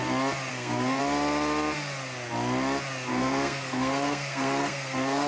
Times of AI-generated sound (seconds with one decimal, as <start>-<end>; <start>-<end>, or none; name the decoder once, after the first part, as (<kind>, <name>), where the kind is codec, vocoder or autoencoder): 0.5-1.0 (codec, SNAC); 3.1-5.3